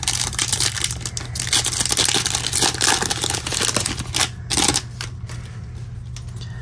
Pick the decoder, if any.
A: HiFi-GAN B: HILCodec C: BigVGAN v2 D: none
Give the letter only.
D